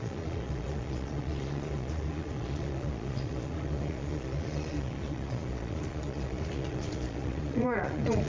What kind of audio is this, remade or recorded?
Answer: remade